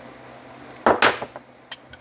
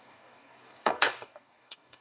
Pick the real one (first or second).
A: first